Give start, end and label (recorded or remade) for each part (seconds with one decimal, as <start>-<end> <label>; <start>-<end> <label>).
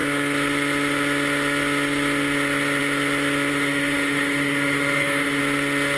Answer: 0.0-3.5 recorded; 3.5-5.4 remade; 5.4-6.0 recorded